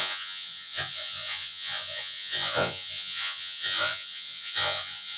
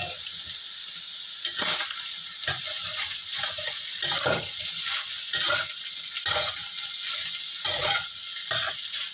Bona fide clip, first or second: second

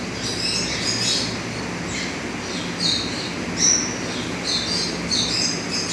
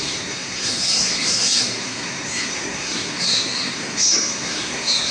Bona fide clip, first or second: first